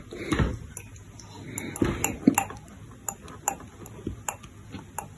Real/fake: real